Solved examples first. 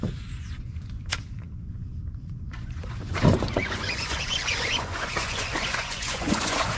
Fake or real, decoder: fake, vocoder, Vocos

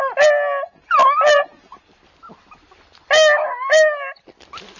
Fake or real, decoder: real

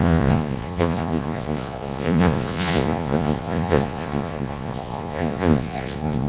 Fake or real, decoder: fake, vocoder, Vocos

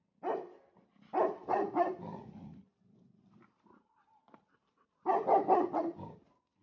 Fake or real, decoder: real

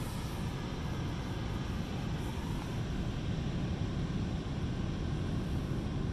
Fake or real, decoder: real